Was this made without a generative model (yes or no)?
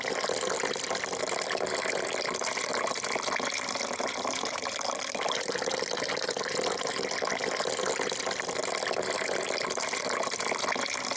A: no